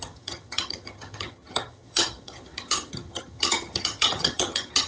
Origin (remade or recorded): remade